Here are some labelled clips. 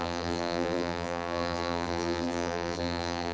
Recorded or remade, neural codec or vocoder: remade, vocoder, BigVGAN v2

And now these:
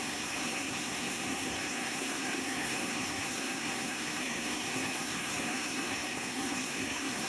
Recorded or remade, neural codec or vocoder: remade, codec, SNAC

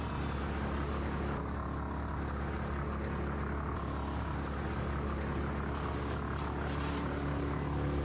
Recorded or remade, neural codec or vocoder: recorded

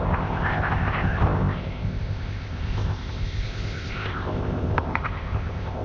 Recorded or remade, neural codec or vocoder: remade, codec, ZipCodec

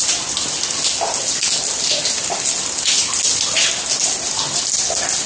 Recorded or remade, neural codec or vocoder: recorded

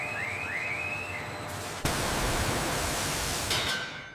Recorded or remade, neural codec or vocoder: recorded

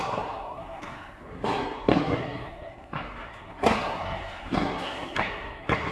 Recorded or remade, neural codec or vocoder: remade, codec, SNAC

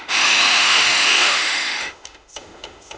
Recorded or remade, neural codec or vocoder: remade, autoencoder, DAC-VAE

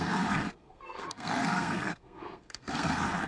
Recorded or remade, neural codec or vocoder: remade, codec, SNAC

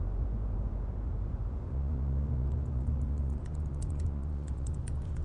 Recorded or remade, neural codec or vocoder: remade, vocoder, Vocos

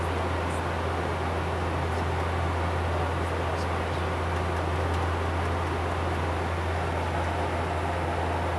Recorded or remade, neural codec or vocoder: recorded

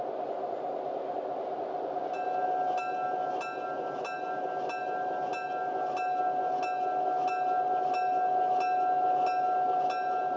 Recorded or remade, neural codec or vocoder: recorded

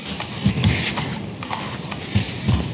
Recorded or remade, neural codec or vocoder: recorded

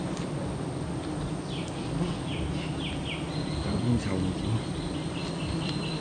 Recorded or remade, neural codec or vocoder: recorded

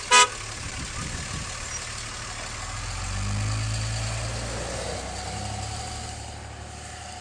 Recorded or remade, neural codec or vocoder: recorded